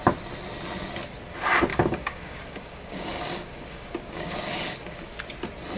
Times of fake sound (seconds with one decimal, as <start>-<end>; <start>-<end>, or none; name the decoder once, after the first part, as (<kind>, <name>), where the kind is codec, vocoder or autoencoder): 1.7-5.2 (codec, DAC)